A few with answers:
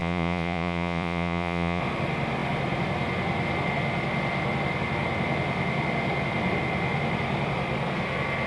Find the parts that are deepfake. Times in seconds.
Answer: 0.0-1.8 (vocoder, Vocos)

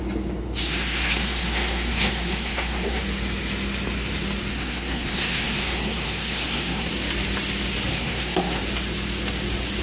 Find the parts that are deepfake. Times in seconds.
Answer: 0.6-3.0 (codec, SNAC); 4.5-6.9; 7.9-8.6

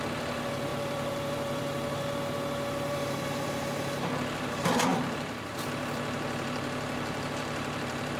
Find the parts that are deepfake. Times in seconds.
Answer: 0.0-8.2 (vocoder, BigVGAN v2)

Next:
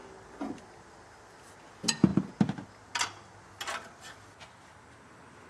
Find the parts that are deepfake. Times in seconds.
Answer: none

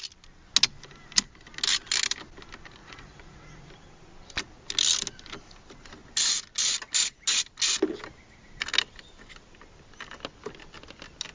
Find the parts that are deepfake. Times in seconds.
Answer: 2.8-3.7 (vocoder, Vocos)

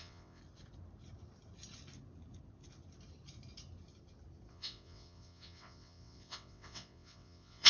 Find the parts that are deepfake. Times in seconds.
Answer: 0.0-0.4 (vocoder, WaveNeXt); 4.5-7.7

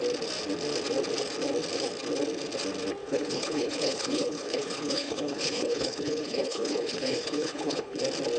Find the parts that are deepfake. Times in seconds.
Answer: 3.0-8.0 (codec, HILCodec)

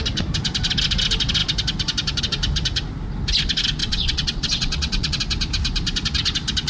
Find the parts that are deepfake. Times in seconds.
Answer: 3.8-5.2 (vocoder, WaveNeXt)